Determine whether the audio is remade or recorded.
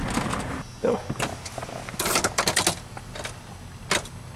recorded